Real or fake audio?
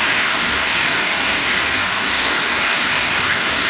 fake